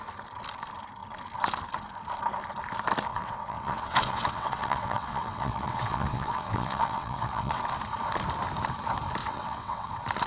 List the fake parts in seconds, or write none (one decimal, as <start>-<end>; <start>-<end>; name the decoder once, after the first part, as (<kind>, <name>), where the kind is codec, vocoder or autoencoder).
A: 3.1-7.6 (vocoder, WaveNeXt); 9.2-9.9